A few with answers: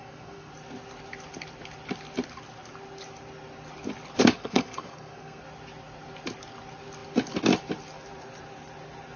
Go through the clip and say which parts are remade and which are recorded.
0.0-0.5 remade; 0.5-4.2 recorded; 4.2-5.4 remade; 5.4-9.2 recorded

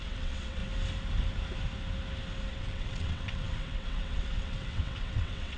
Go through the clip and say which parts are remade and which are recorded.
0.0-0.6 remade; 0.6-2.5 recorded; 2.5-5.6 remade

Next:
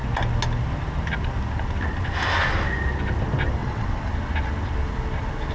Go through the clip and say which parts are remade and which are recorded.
0.0-3.6 recorded; 3.6-4.1 remade; 4.1-5.5 recorded

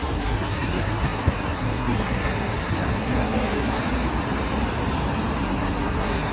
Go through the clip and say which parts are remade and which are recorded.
0.0-3.8 remade; 3.8-5.4 recorded; 5.4-6.3 remade